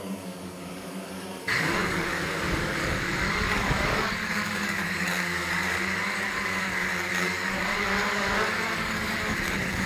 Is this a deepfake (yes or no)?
yes